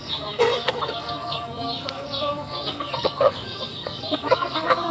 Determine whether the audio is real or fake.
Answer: fake